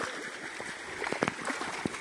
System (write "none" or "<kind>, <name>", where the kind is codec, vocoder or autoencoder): none